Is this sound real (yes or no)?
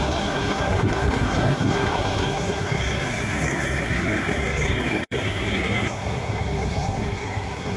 no